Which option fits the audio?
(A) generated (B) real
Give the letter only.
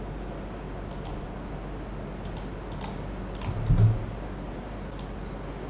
B